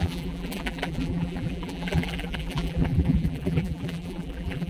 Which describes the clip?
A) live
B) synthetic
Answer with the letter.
B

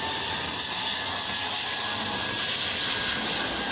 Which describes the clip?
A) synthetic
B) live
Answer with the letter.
B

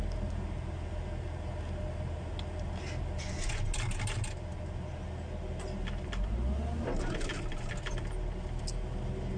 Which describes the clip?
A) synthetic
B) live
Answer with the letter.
B